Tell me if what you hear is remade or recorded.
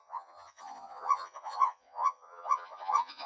remade